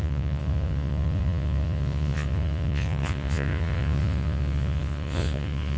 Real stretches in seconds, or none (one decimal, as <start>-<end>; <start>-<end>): none